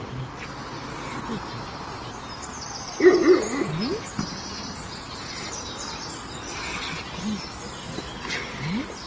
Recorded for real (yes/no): yes